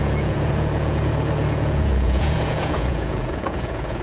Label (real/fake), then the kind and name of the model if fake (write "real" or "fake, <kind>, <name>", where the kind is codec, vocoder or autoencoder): fake, vocoder, Vocos